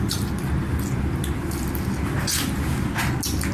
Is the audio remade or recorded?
recorded